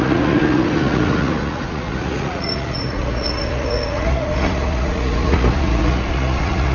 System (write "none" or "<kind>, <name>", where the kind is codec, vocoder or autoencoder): vocoder, Vocos